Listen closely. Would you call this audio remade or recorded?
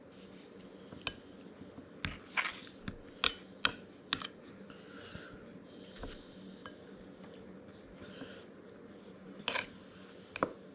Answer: recorded